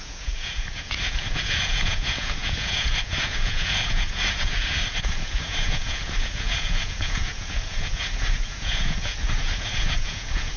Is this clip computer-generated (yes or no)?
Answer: yes